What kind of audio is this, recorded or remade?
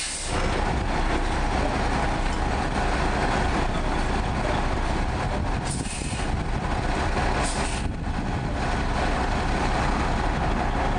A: recorded